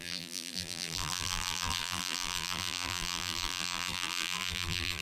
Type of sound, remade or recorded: remade